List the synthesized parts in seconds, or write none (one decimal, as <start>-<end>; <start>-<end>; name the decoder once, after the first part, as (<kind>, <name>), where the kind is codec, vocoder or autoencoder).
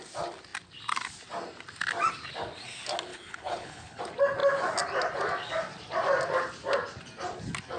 3.1-4.0 (codec, HILCodec)